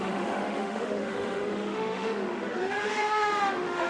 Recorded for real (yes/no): no